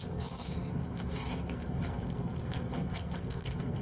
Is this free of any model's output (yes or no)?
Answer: no